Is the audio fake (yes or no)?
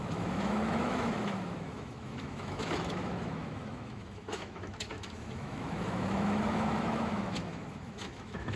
yes